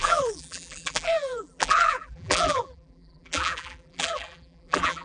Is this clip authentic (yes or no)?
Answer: no